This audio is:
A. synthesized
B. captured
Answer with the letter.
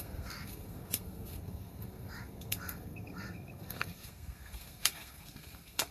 A